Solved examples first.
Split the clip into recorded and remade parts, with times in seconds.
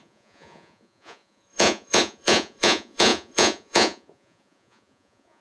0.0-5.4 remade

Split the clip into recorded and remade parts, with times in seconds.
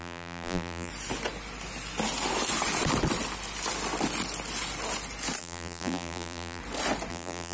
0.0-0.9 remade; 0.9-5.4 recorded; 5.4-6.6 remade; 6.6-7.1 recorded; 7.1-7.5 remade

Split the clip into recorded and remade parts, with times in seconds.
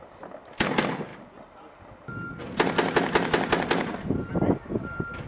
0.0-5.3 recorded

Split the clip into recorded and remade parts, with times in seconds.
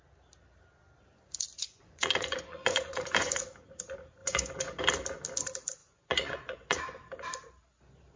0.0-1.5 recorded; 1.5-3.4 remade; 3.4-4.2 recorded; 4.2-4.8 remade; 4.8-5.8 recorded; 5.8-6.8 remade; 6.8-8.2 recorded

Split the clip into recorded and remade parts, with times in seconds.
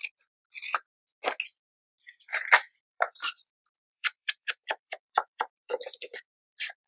0.0-2.3 recorded; 2.3-6.4 remade; 6.4-6.9 recorded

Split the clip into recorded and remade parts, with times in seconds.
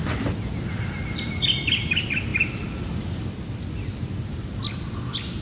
0.0-5.4 recorded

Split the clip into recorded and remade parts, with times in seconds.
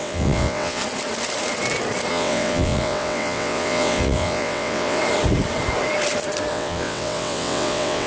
0.0-0.8 remade; 0.8-2.1 recorded; 2.1-5.0 remade; 5.0-6.5 recorded; 6.5-8.1 remade